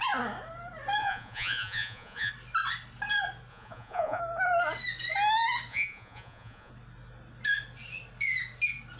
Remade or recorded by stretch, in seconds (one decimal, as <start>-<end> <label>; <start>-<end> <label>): 0.0-1.0 recorded; 1.0-2.3 remade; 2.3-3.5 recorded; 3.5-4.2 remade; 4.2-5.7 recorded; 5.7-6.7 remade; 6.7-9.0 recorded